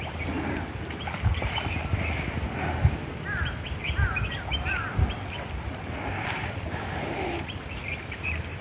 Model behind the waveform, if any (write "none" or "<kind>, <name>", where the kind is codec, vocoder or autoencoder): none